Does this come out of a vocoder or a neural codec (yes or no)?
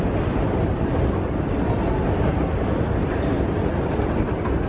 no